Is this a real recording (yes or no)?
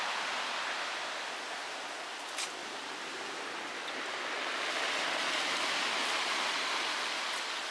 yes